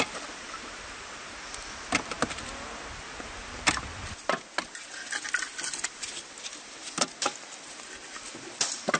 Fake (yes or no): no